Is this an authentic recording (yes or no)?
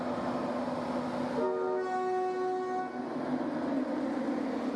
yes